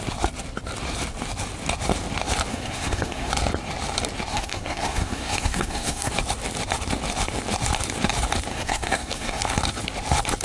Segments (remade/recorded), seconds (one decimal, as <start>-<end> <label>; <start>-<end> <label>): 0.0-2.5 recorded; 2.5-3.3 remade; 3.3-4.3 recorded; 4.3-6.1 remade; 6.1-8.5 recorded; 8.5-9.4 remade; 9.4-10.4 recorded